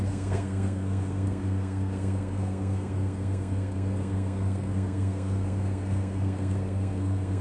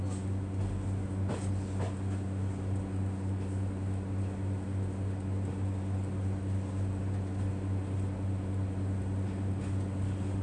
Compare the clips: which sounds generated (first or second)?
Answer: first